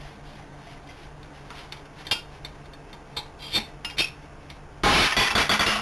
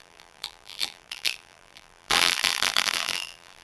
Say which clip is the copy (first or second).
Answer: second